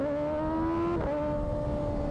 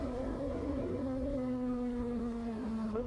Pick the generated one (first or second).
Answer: second